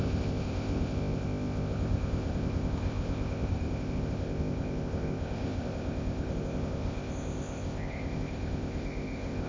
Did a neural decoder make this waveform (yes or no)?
yes